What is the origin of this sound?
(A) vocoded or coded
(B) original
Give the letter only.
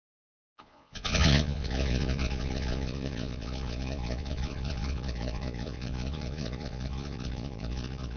A